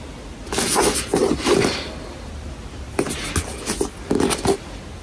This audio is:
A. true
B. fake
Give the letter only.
A